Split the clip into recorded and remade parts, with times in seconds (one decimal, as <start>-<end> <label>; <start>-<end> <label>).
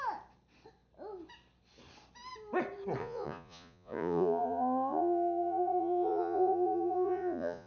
0.0-3.0 recorded; 3.0-7.7 remade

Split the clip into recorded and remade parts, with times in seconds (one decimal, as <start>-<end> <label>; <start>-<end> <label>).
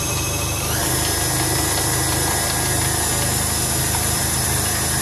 0.0-0.8 remade; 0.8-3.8 recorded; 3.8-5.0 remade